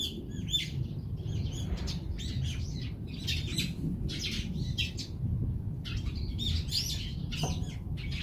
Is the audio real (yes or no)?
yes